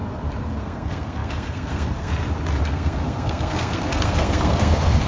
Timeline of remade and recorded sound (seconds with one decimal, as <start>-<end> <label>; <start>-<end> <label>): 0.0-0.6 recorded; 0.6-2.1 remade; 2.1-2.6 recorded; 2.6-5.1 remade